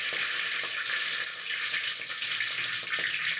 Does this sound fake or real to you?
real